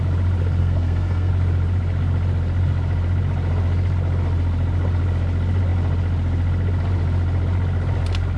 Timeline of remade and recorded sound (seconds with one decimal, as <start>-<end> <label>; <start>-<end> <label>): 0.0-0.6 recorded; 0.6-1.3 remade; 1.3-8.4 recorded